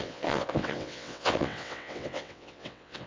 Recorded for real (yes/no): no